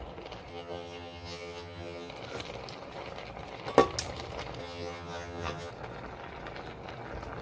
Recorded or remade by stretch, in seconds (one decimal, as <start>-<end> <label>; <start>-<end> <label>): 0.0-0.5 recorded; 0.5-2.1 remade; 2.1-4.6 recorded; 4.6-5.7 remade; 5.7-7.4 recorded

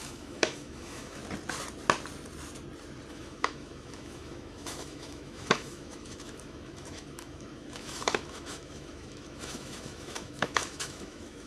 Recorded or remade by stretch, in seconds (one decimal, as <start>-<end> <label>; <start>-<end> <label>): 0.0-1.2 remade; 1.2-3.1 recorded; 3.1-11.5 remade

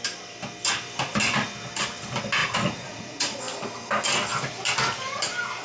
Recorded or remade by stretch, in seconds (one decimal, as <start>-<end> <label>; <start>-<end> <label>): 0.0-2.4 recorded; 2.4-3.4 remade; 3.4-5.6 recorded

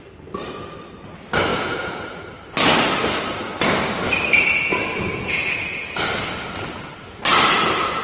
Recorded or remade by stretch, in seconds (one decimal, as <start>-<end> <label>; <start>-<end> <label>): 0.0-1.5 recorded; 1.5-2.0 remade; 2.0-4.7 recorded; 4.7-6.0 remade; 6.0-8.0 recorded

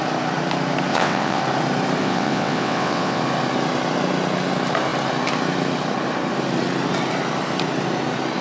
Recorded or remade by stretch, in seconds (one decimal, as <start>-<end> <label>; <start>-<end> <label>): 0.0-0.9 recorded; 0.9-1.4 remade; 1.4-2.0 recorded; 2.0-3.2 remade; 3.2-8.4 recorded